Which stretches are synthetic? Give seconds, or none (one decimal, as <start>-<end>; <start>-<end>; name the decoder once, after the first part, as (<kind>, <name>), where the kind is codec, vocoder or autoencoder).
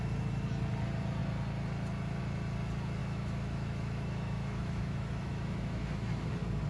3.0-6.3 (autoencoder, DAC-VAE)